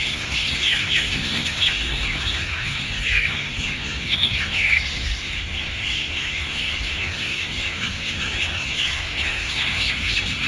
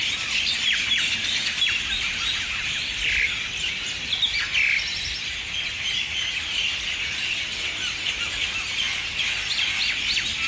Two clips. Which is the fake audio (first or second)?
first